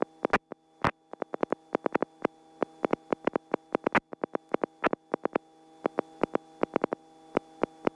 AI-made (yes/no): no